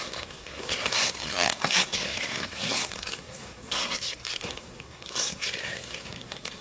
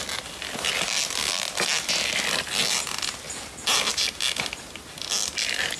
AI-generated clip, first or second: first